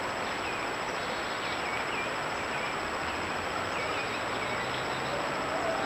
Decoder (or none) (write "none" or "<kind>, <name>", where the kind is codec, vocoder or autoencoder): none